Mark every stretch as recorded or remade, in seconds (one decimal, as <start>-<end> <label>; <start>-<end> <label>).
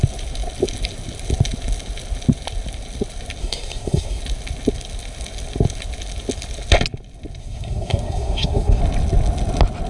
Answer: 0.0-3.4 recorded; 3.4-4.2 remade; 4.2-7.4 recorded; 7.4-8.8 remade; 8.8-9.9 recorded